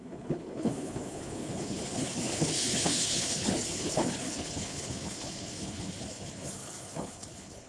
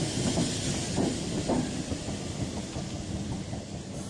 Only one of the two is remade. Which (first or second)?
first